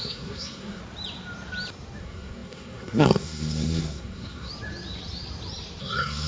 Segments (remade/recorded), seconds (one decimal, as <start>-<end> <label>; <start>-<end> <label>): 0.0-0.8 remade; 0.8-2.0 recorded; 2.0-4.5 remade; 4.5-5.8 recorded; 5.8-6.3 remade

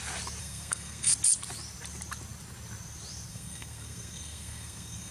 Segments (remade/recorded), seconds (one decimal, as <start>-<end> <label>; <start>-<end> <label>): 0.0-0.4 recorded; 0.4-1.1 remade; 1.1-3.3 recorded; 3.3-5.1 remade

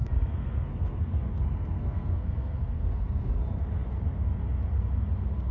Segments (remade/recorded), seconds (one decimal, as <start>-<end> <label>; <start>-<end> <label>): 0.0-3.3 remade; 3.3-5.5 recorded